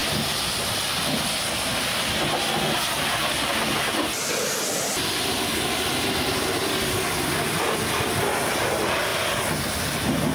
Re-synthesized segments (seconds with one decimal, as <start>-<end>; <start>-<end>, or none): 6.6-7.7

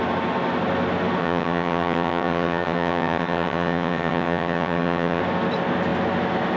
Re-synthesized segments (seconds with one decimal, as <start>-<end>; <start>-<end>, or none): 1.2-5.2

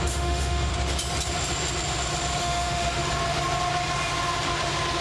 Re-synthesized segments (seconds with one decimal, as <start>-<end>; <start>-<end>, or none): 0.0-0.7; 2.4-3.0